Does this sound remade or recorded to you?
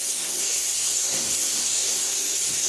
remade